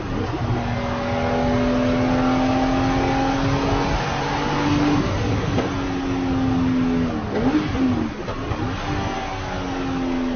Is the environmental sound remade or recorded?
recorded